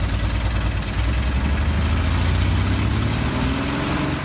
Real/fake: real